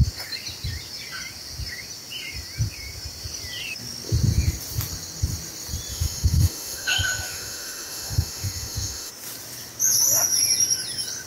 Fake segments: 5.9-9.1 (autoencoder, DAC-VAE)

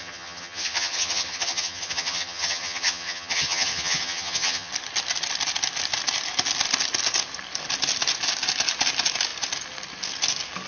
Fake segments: 0.0-4.7 (vocoder, HiFi-GAN)

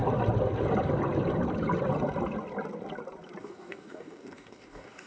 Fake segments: 3.4-5.1 (codec, DAC)

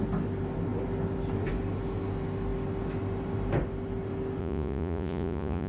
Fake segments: 4.4-5.7 (vocoder, Vocos)

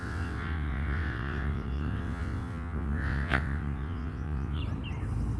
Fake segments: 0.0-4.6 (vocoder, WaveNeXt)

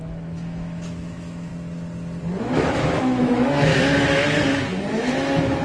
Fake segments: 0.0-1.5 (autoencoder, DAC-VAE); 2.4-3.7; 4.9-5.6

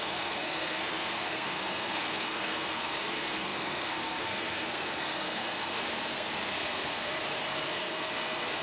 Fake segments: 0.0-7.1 (codec, SNAC); 7.7-8.6

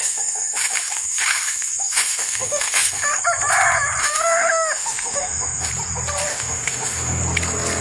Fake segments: 0.0-3.2 (autoencoder, DAC-VAE); 4.0-5.7; 6.3-7.2